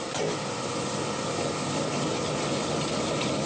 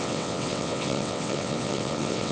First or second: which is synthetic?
second